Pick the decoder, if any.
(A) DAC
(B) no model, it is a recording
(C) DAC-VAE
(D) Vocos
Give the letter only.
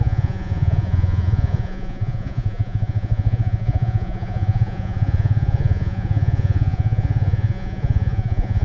D